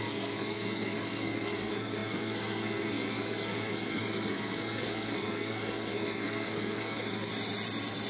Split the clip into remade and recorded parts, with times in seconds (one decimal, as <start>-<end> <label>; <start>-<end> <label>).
0.0-7.3 remade; 7.3-8.1 recorded